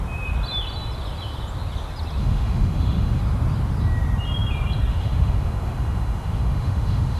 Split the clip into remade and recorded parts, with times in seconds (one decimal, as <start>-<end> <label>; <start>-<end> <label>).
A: 0.0-2.2 recorded; 2.2-3.2 remade; 3.2-4.9 recorded; 4.9-7.2 remade